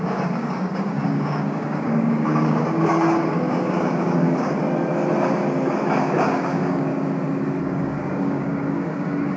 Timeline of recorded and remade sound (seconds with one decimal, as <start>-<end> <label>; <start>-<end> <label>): 0.0-4.6 remade; 4.6-6.0 recorded; 6.0-6.9 remade; 6.9-7.6 recorded; 7.6-9.4 remade